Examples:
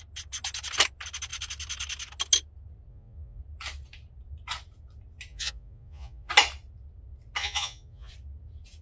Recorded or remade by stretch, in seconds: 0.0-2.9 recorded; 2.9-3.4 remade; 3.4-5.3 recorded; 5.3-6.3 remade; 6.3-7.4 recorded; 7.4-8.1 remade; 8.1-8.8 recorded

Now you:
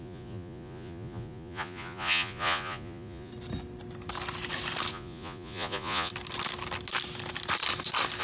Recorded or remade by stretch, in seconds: 0.0-3.3 remade; 3.3-4.9 recorded; 4.9-6.1 remade; 6.1-8.2 recorded

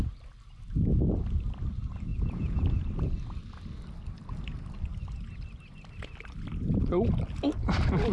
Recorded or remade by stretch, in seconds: 0.0-2.1 recorded; 2.1-2.8 remade; 2.8-8.1 recorded

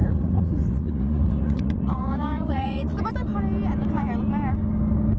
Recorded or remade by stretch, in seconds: 0.0-3.1 remade; 3.1-5.2 recorded